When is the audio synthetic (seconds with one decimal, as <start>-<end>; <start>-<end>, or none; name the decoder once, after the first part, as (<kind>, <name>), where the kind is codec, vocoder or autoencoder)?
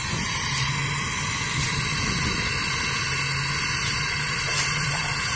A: 0.0-0.8 (vocoder, BigVGAN v2); 4.0-5.4